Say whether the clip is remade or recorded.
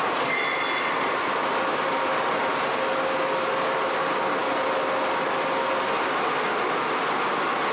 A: recorded